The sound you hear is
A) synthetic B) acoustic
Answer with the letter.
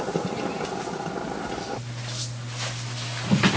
B